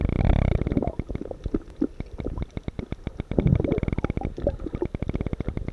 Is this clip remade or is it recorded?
recorded